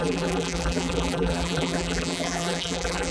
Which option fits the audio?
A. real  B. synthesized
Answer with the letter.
B